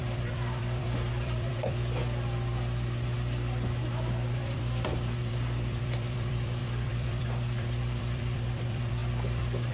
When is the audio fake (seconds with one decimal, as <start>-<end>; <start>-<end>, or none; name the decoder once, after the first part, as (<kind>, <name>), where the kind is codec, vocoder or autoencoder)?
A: 0.0-2.0 (vocoder, BigVGAN v2); 4.4-9.7